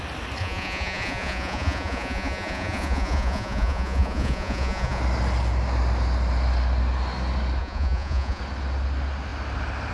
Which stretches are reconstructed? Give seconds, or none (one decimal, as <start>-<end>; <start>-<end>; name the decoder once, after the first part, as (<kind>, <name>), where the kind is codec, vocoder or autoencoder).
0.4-5.0 (vocoder, Vocos); 7.6-8.4